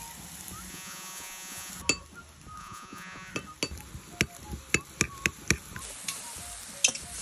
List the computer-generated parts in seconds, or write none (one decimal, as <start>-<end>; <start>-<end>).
0.7-1.7; 2.6-3.3